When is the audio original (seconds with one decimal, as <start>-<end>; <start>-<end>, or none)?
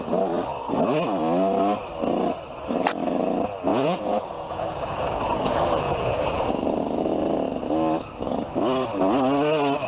0.0-3.7; 6.5-9.9